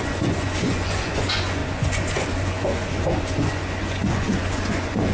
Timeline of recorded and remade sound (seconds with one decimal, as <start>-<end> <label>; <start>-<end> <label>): 0.0-5.1 remade